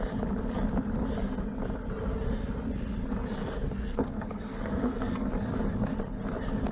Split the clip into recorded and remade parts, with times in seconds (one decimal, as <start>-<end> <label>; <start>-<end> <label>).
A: 0.0-3.4 recorded; 3.4-5.3 remade; 5.3-6.7 recorded